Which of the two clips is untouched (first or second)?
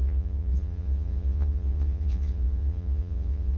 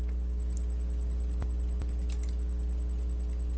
second